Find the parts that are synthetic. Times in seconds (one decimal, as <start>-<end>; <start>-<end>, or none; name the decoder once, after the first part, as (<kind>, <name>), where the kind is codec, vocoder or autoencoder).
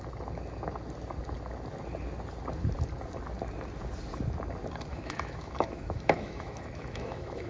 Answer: 4.9-7.5 (autoencoder, DAC-VAE)